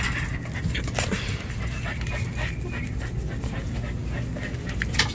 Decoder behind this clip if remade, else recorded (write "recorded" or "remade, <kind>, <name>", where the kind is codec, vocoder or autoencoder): recorded